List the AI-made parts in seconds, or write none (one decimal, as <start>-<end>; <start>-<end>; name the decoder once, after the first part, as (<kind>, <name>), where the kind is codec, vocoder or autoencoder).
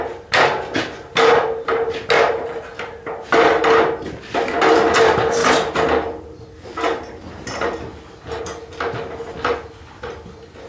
none